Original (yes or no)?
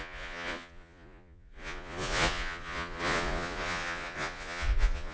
no